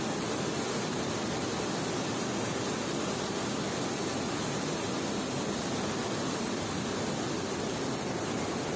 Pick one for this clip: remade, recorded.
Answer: recorded